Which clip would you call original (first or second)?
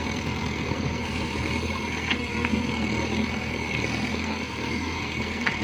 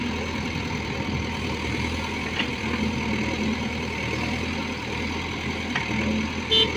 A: second